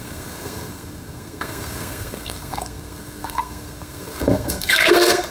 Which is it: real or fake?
fake